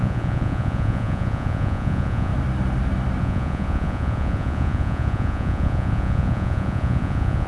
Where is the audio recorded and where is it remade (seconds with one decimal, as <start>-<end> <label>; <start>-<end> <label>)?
0.0-2.3 remade; 2.3-3.2 recorded; 3.2-7.5 remade